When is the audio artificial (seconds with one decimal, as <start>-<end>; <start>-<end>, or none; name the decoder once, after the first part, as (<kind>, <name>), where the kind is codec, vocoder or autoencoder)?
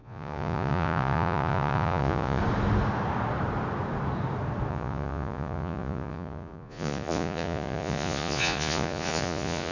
0.0-2.4 (vocoder, Vocos); 4.7-9.7